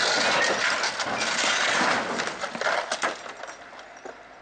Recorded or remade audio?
recorded